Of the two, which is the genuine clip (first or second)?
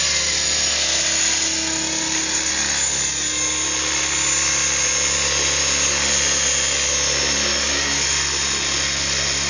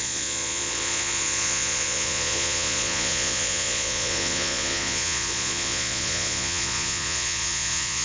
first